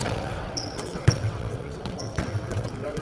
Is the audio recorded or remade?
remade